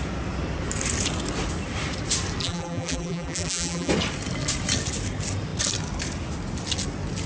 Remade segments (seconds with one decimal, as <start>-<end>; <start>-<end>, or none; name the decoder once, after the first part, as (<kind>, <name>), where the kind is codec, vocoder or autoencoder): 2.4-3.9 (vocoder, BigVGAN v2)